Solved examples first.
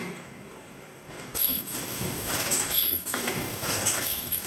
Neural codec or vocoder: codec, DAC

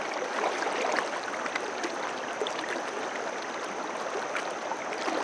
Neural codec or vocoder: none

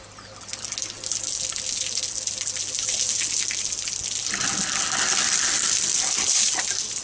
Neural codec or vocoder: none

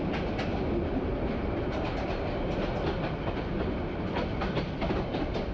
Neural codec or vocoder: none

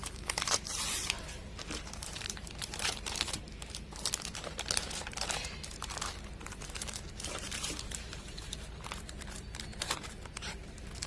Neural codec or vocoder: vocoder, BigVGAN v2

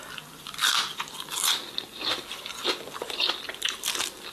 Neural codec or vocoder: vocoder, BigVGAN v2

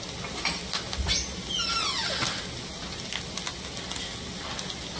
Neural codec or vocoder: none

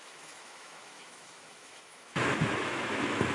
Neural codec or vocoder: autoencoder, DAC-VAE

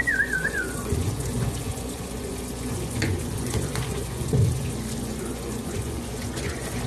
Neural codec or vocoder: vocoder, Vocos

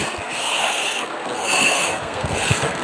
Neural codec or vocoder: codec, SNAC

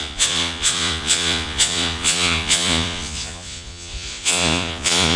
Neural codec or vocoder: vocoder, Vocos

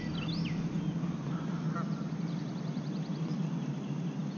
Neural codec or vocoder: none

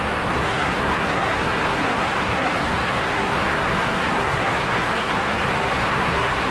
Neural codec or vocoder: codec, SNAC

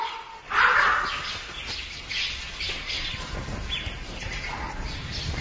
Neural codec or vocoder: none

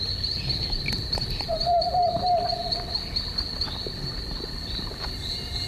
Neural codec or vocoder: vocoder, BigVGAN v2